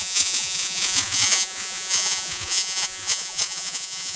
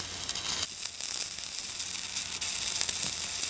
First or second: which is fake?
first